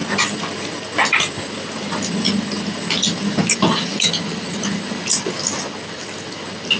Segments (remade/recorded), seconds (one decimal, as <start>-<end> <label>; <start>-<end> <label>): 0.0-3.5 remade; 3.5-6.8 recorded